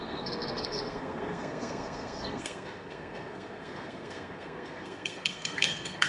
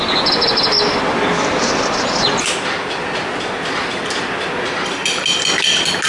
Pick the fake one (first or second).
first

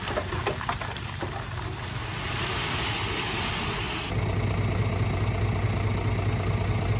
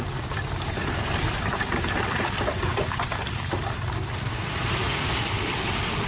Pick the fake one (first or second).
second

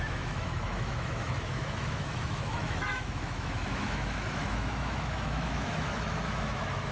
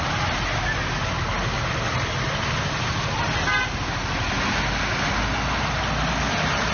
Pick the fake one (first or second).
first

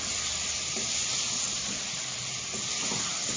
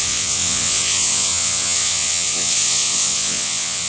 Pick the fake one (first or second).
second